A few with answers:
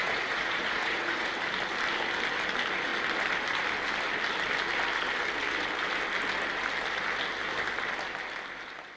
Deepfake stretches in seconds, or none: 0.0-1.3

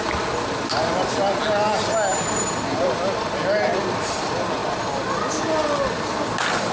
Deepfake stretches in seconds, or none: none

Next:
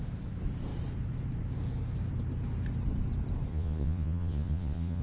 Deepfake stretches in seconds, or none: 3.5-5.0